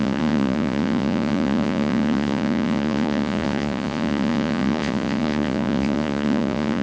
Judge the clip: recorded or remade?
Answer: remade